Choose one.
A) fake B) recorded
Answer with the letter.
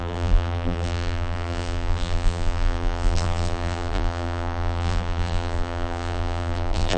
A